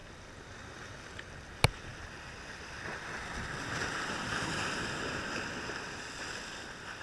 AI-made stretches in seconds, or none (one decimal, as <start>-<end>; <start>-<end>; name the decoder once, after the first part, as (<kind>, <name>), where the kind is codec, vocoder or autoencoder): none